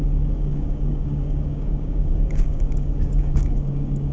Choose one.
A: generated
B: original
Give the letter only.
A